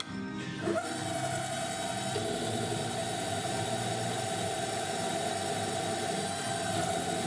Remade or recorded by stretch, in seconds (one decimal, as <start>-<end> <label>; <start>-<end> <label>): 0.0-7.3 recorded